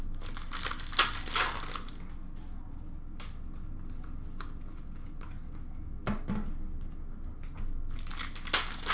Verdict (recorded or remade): recorded